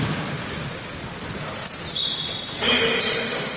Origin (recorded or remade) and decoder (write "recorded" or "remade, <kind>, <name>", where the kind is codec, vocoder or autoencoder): recorded